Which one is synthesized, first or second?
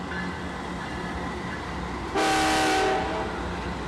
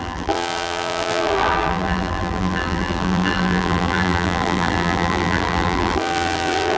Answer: second